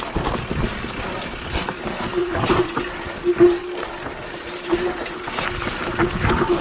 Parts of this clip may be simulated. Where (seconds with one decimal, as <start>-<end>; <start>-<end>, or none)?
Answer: none

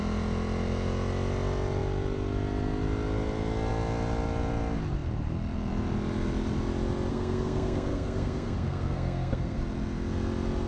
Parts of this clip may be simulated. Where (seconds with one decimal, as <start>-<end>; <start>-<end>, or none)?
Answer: 7.1-9.6

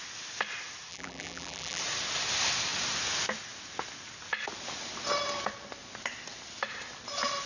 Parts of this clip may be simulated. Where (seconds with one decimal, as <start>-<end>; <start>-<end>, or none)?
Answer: 0.9-1.8

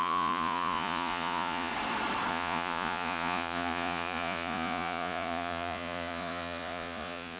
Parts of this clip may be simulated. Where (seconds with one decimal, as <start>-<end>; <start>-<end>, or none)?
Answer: 0.0-1.7; 2.3-7.4

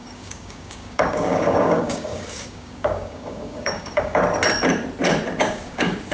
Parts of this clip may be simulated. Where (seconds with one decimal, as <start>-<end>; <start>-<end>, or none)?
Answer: 0.0-4.2; 5.4-6.1

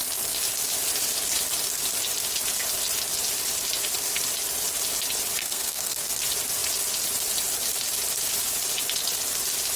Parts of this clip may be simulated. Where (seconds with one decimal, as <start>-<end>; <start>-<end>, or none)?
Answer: 5.4-6.1

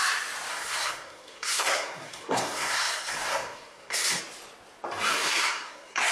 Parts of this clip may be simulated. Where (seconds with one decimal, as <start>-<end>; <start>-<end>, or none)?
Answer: 0.5-4.2; 5.1-6.1